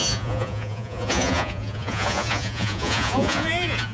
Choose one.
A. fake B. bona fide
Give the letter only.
A